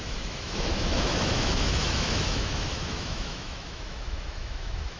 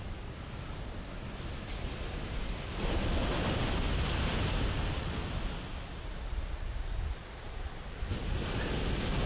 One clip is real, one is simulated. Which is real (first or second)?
second